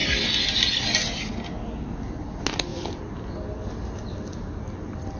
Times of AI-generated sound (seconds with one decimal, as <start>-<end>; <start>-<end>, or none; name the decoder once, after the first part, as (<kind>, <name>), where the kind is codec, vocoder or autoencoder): 2.7-3.2 (vocoder, BigVGAN v2)